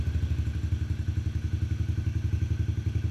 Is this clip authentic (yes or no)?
yes